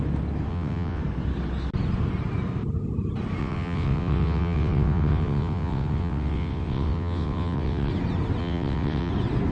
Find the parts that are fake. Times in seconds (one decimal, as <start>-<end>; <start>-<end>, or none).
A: 0.5-1.0; 3.4-7.9; 8.4-9.1